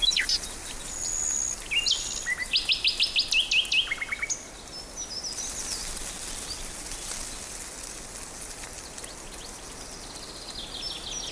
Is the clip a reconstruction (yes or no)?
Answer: no